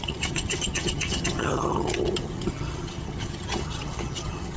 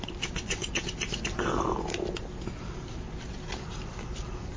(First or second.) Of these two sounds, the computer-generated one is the first